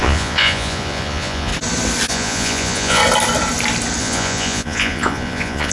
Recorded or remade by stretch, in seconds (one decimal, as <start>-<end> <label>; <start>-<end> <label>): 0.0-1.5 remade; 1.5-2.1 recorded; 2.1-3.0 remade; 3.0-4.0 recorded; 4.0-5.7 remade